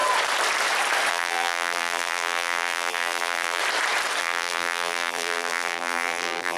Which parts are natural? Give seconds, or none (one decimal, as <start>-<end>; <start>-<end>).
0.0-1.1; 3.6-4.2